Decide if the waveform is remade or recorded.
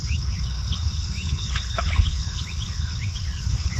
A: remade